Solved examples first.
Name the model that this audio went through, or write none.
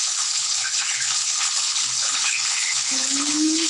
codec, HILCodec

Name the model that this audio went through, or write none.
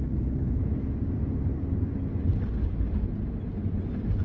none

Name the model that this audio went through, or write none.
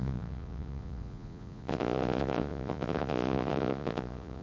vocoder, Vocos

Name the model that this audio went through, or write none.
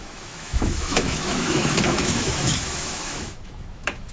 autoencoder, DAC-VAE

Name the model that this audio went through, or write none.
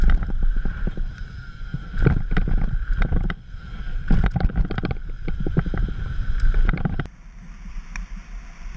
vocoder, BigVGAN v2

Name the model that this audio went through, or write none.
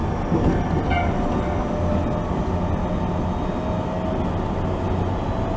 none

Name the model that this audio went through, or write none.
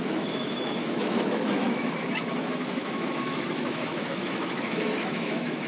autoencoder, DAC-VAE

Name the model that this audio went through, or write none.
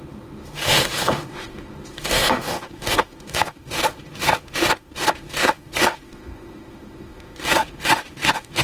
autoencoder, DAC-VAE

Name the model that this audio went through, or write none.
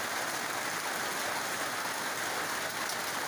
none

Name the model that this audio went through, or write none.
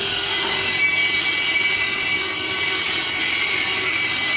none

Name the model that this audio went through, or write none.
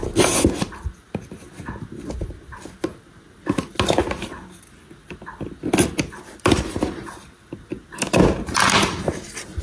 none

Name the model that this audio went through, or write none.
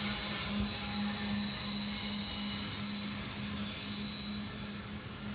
none